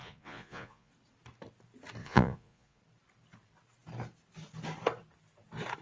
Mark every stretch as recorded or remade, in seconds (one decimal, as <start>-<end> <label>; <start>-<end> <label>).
0.0-0.9 remade; 0.9-2.0 recorded; 2.0-2.8 remade; 2.8-5.8 recorded